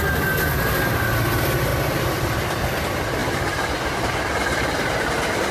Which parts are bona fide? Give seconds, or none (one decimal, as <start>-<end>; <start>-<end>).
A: 0.0-1.7; 2.8-3.2; 4.9-5.5